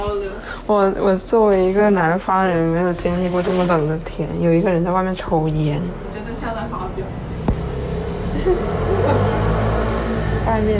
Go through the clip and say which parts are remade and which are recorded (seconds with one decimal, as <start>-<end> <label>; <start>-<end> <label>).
0.0-1.8 recorded; 1.8-3.7 remade; 3.7-10.8 recorded